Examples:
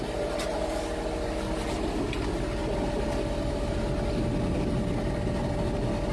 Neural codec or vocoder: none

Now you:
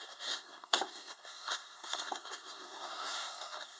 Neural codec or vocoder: codec, SNAC